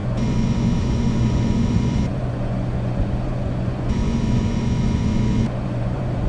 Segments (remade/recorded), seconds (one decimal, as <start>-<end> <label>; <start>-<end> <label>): 0.0-6.3 remade